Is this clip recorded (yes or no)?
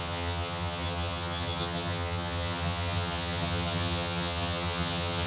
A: no